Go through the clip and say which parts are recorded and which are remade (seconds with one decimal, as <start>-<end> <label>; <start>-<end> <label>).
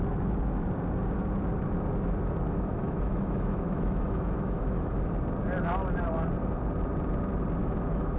0.0-2.7 recorded; 2.7-5.1 remade; 5.1-7.6 recorded; 7.6-8.2 remade